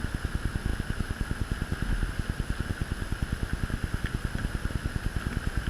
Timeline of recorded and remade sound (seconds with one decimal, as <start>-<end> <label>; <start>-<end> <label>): 0.0-5.7 recorded